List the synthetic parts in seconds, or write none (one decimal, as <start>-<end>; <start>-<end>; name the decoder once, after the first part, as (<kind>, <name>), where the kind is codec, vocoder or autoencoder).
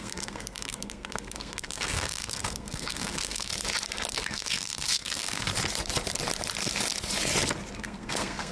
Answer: 0.0-3.5 (codec, SNAC); 4.1-5.5; 7.8-8.5